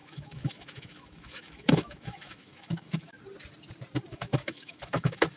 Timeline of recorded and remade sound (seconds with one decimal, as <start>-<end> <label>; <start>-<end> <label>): 0.0-3.2 remade; 3.2-4.1 recorded; 4.1-5.4 remade